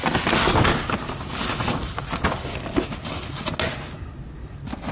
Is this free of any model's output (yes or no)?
yes